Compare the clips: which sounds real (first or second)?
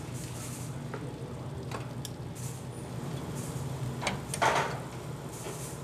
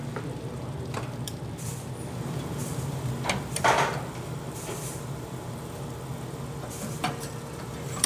first